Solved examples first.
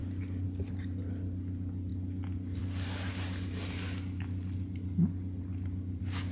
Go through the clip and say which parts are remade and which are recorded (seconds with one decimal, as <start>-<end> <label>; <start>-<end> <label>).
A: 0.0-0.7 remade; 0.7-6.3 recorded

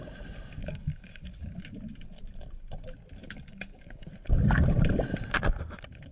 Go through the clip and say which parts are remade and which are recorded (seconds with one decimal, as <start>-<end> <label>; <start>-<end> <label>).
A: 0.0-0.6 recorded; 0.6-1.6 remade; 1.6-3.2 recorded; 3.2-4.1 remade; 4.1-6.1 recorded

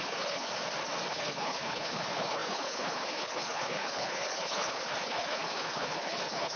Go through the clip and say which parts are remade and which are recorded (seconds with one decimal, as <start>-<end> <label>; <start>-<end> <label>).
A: 0.0-0.5 remade; 0.5-1.1 recorded; 1.1-6.6 remade